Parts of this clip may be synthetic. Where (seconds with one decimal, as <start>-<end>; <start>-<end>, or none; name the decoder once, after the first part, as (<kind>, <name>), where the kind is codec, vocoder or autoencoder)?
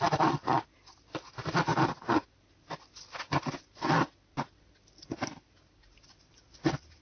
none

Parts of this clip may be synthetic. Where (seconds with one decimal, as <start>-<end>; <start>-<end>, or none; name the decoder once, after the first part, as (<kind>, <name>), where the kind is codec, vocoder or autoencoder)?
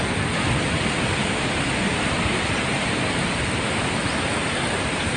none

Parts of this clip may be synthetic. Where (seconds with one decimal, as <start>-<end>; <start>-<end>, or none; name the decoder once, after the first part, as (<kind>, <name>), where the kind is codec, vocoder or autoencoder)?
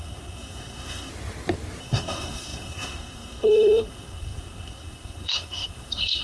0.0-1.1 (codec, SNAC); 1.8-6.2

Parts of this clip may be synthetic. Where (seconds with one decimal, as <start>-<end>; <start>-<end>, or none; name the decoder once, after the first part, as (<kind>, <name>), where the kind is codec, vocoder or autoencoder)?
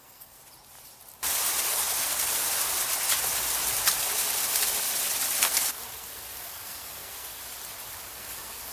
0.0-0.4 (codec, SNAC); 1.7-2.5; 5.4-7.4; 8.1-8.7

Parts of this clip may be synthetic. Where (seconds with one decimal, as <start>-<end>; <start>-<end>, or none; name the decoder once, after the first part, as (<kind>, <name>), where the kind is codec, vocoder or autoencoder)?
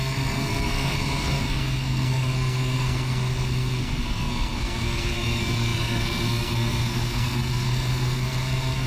0.0-8.9 (codec, SNAC)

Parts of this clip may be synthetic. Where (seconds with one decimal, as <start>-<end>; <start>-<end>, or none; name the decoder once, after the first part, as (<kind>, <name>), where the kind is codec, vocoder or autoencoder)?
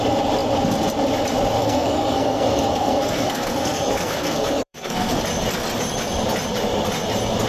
1.6-5.1 (codec, SNAC)